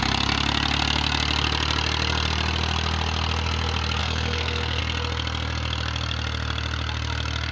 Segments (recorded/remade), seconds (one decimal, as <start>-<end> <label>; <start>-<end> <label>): 0.0-4.0 recorded; 4.0-4.8 remade; 4.8-7.5 recorded